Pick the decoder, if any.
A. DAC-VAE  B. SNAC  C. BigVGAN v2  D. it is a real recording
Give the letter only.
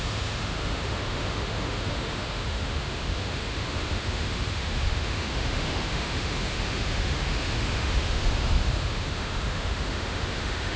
A